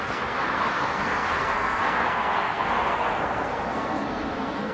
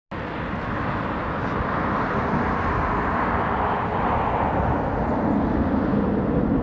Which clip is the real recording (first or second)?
second